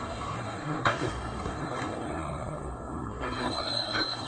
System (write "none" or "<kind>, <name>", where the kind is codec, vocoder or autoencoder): codec, SNAC